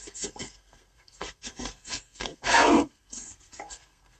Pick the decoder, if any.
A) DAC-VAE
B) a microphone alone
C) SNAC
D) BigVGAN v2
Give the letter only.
C